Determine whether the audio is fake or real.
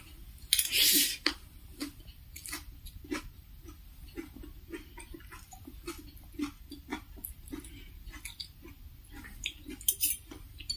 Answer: real